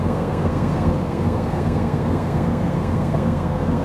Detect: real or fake fake